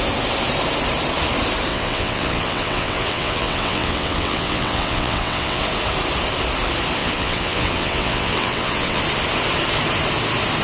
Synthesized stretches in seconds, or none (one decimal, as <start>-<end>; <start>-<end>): 1.7-5.6; 7.0-9.0